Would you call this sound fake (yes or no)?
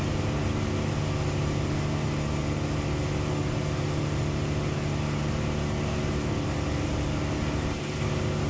no